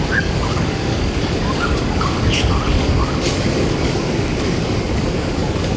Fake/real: fake